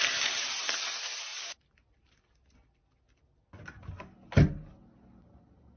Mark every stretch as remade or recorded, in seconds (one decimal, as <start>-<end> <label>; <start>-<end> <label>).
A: 0.0-5.8 recorded